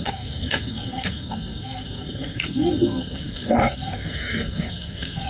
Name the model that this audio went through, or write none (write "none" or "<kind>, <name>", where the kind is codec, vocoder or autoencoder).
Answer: codec, SNAC